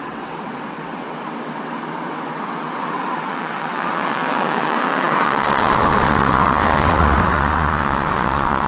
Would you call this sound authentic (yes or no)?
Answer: no